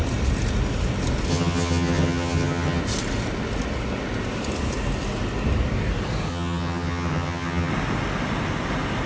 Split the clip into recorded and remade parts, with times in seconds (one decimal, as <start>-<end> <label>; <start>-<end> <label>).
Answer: 0.0-1.3 recorded; 1.3-2.8 remade; 2.8-6.3 recorded; 6.3-7.7 remade; 7.7-9.1 recorded

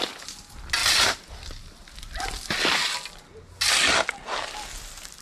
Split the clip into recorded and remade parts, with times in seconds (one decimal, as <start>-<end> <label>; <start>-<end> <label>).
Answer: 0.0-5.2 recorded

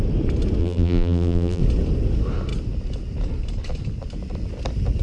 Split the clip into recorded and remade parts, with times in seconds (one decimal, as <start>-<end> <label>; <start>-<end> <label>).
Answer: 0.0-0.6 recorded; 0.6-1.6 remade; 1.6-5.0 recorded

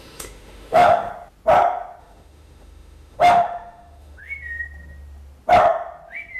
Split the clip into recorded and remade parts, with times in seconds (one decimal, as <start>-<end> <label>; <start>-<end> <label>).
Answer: 0.0-1.1 remade; 1.1-2.0 recorded; 2.0-4.2 remade; 4.2-6.4 recorded